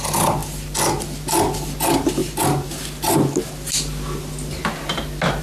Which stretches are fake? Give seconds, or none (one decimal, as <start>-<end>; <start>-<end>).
none